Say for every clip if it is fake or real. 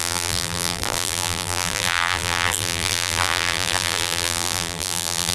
fake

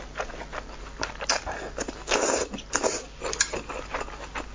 real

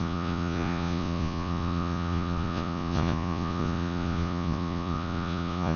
fake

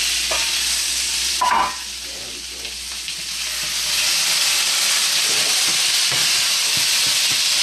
real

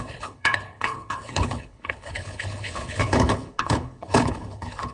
fake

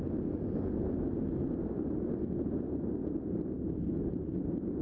real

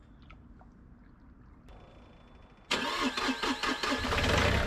real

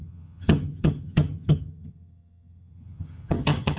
fake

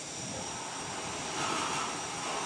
real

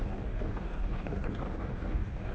fake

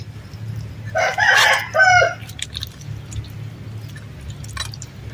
real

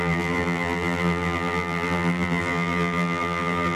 fake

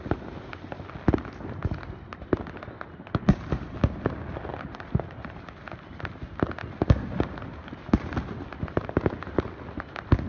real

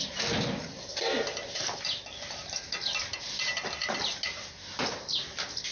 real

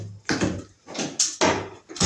real